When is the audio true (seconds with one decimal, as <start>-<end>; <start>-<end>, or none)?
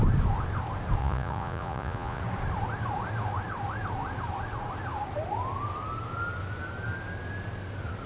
0.0-1.0; 2.2-8.1